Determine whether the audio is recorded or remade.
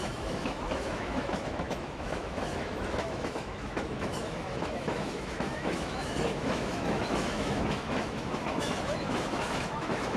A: remade